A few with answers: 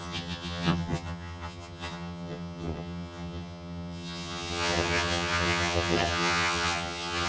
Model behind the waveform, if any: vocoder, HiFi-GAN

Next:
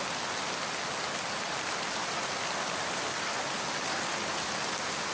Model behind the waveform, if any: none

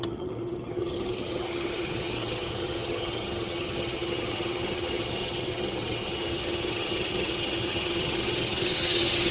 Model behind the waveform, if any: vocoder, HiFi-GAN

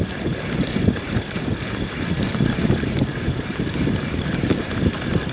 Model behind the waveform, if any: none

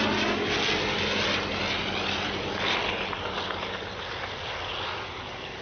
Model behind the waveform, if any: none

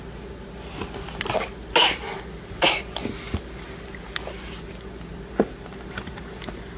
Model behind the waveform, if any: none